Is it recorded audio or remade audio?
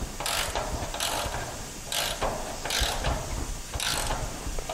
recorded